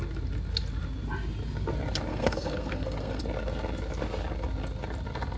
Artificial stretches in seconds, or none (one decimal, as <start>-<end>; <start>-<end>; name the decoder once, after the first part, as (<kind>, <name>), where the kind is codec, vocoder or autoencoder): 2.1-3.2 (codec, SNAC)